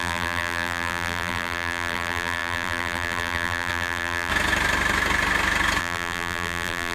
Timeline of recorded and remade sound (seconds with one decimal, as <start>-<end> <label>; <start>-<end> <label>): 0.0-4.3 remade; 4.3-5.8 recorded; 5.8-6.9 remade